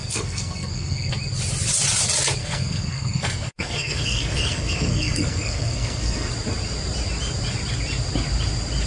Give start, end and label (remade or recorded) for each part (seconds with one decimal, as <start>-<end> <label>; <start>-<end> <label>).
0.0-1.1 remade; 1.1-2.4 recorded; 2.4-6.3 remade; 6.3-8.9 recorded